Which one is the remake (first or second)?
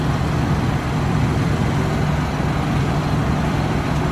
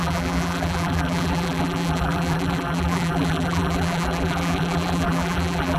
second